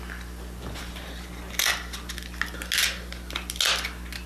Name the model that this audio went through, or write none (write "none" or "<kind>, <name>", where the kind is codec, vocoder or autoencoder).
none